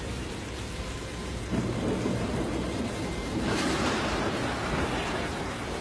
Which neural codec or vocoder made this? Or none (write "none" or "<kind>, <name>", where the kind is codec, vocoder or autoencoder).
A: vocoder, BigVGAN v2